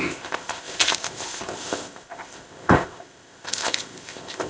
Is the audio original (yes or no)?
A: no